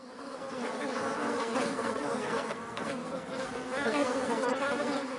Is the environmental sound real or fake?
fake